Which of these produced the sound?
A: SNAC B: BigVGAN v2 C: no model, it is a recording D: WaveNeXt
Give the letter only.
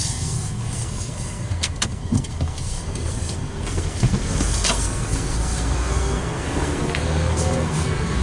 A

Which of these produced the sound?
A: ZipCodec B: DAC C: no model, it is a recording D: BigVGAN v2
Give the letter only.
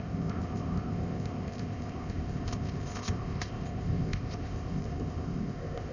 A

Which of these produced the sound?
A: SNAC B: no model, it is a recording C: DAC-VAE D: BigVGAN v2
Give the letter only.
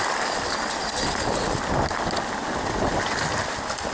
B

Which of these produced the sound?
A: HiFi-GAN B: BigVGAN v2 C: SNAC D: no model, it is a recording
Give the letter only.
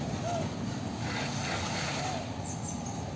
D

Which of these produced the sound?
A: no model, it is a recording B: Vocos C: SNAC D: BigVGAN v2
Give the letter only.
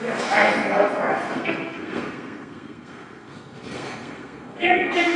C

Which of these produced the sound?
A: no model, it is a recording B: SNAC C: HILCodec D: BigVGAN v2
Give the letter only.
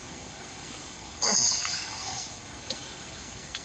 B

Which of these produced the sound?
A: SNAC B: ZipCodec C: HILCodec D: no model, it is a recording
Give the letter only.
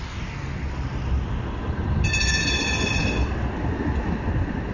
D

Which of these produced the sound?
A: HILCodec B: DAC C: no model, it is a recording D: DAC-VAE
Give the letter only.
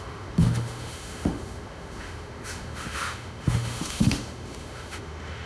D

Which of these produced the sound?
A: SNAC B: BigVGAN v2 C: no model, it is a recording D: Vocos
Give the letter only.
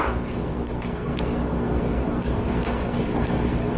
A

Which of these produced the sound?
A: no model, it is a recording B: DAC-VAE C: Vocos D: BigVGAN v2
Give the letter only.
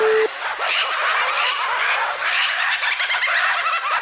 A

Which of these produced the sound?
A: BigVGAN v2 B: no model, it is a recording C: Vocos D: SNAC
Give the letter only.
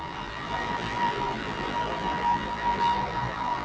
A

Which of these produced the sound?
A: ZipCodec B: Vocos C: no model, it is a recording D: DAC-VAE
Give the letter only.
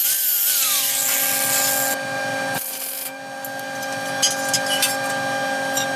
C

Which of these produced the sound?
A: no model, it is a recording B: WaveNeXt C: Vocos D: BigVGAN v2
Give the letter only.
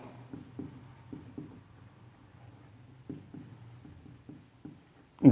A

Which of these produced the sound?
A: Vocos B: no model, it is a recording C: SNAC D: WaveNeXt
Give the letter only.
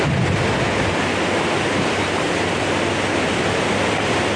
B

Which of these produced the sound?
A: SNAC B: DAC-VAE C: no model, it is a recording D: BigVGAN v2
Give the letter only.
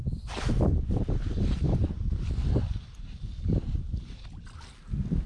C